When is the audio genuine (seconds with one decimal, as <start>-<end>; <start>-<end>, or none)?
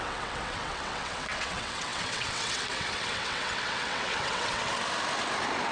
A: 4.7-5.7